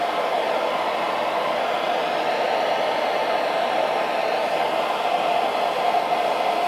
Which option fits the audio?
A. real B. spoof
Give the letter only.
A